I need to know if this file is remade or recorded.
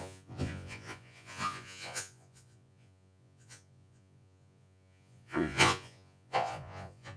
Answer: remade